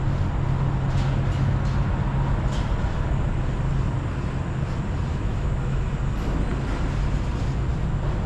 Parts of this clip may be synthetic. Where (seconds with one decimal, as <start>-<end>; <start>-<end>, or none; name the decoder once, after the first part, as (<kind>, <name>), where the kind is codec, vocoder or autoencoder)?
5.1-5.9 (autoencoder, DAC-VAE)